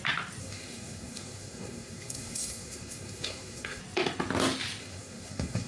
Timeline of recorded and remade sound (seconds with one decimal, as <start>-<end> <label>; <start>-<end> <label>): 0.0-0.4 recorded; 0.4-3.8 remade; 3.8-4.8 recorded; 4.8-5.7 remade